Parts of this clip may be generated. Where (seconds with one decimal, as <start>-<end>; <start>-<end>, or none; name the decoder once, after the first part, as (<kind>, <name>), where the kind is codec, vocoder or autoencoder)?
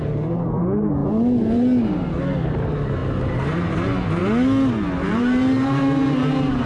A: 0.0-4.2 (vocoder, BigVGAN v2); 5.0-6.7